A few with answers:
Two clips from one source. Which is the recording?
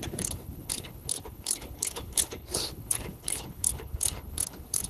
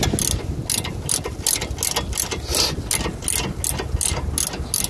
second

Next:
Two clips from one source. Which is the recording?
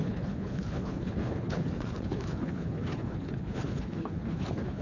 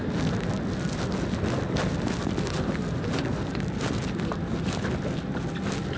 second